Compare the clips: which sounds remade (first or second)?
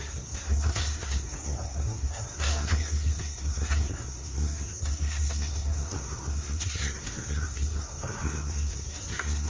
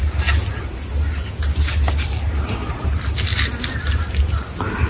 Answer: first